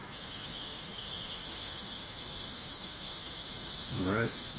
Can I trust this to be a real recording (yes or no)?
no